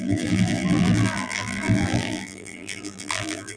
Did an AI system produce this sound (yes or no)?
yes